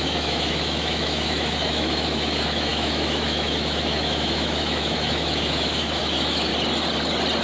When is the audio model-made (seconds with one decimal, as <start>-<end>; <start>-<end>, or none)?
0.0-6.5